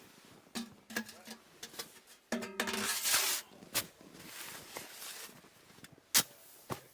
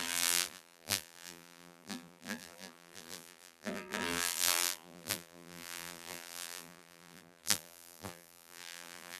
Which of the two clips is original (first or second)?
first